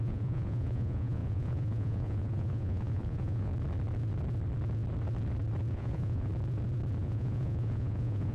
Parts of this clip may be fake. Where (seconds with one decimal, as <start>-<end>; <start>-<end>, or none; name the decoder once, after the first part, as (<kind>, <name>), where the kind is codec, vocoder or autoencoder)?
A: 0.0-3.5 (vocoder, Vocos); 5.7-6.3; 7.0-8.3